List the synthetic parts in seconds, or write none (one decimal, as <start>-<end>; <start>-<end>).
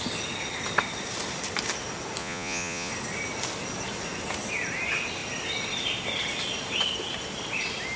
2.2-2.9